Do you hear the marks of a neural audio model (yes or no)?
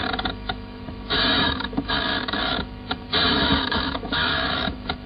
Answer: yes